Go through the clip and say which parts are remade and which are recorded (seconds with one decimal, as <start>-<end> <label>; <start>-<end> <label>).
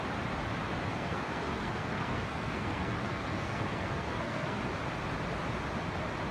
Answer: 0.0-0.9 recorded; 0.9-4.6 remade; 4.6-6.3 recorded